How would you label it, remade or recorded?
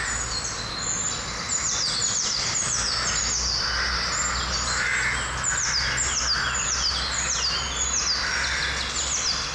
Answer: recorded